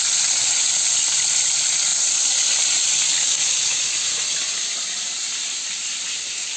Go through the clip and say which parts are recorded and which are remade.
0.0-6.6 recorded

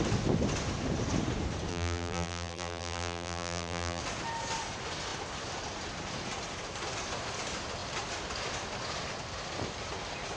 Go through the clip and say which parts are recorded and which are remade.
0.0-1.7 recorded; 1.7-4.0 remade; 4.0-10.4 recorded